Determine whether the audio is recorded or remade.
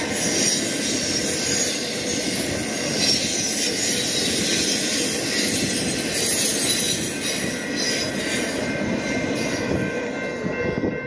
recorded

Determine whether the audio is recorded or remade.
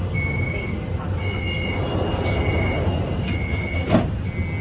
recorded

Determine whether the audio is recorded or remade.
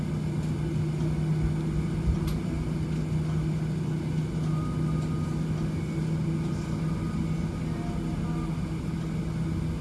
recorded